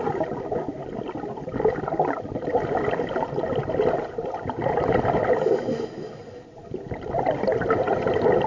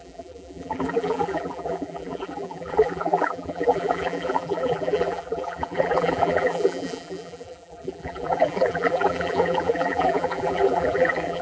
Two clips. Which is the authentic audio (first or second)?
first